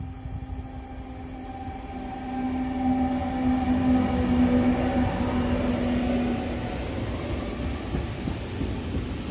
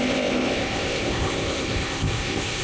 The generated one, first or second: second